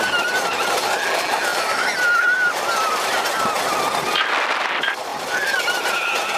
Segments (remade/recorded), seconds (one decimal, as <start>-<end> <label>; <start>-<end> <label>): 0.0-1.5 recorded; 1.5-2.5 remade; 2.5-5.1 recorded; 5.1-5.8 remade; 5.8-6.4 recorded